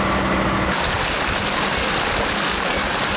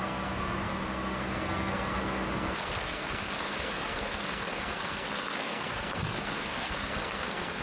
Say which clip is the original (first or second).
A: first